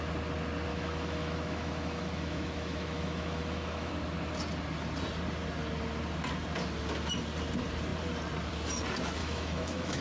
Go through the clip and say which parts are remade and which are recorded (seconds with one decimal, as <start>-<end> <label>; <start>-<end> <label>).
0.0-0.7 recorded; 0.7-3.9 remade; 3.9-9.2 recorded; 9.2-10.0 remade